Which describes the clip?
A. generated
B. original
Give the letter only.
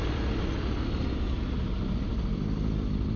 B